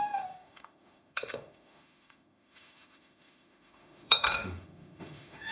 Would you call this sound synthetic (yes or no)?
yes